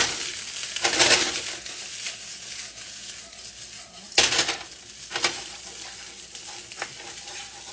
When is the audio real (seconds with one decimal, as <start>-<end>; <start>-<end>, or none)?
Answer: 0.0-2.3; 3.2-7.7